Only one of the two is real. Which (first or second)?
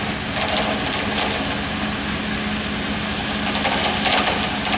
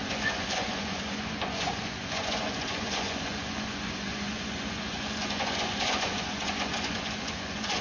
first